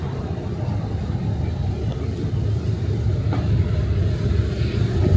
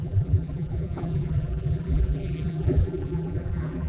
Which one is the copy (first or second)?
second